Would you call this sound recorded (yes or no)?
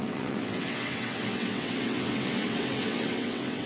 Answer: no